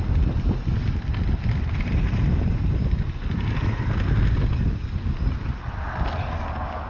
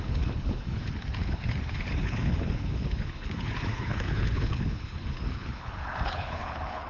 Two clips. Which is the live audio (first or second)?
first